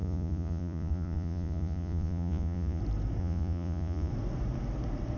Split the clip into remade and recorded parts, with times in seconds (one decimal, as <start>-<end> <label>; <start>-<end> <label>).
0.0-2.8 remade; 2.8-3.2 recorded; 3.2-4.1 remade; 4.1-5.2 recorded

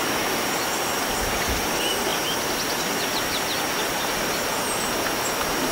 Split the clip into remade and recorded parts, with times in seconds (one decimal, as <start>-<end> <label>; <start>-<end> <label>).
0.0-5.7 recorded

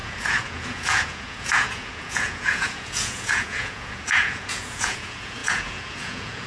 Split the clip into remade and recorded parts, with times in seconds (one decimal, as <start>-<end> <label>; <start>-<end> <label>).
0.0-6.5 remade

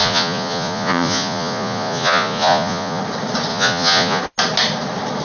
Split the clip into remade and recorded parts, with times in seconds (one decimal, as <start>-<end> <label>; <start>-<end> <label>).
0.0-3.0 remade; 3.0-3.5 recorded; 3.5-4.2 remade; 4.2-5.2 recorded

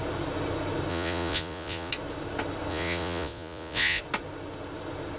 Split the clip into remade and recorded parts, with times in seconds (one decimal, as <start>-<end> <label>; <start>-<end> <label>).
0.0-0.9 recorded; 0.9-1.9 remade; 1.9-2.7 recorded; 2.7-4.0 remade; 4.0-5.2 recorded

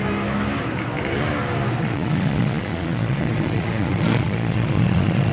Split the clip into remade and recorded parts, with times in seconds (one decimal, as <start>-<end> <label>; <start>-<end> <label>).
0.0-1.8 recorded; 1.8-5.3 remade

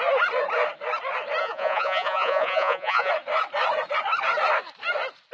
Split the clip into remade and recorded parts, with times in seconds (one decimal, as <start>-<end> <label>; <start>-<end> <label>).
0.0-1.4 recorded; 1.4-3.1 remade; 3.1-5.3 recorded

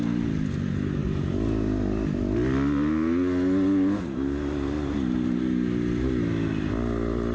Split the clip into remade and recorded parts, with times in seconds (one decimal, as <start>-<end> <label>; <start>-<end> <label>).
0.0-7.3 recorded